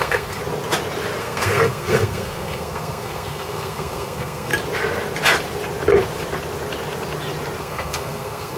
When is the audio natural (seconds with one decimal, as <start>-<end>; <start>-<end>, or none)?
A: 0.4-1.2; 4.5-7.6